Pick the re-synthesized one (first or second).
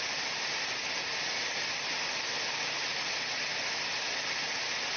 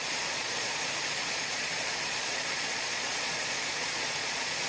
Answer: second